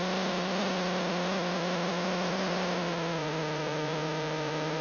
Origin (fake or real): fake